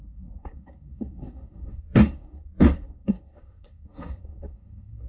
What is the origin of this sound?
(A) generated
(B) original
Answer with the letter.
A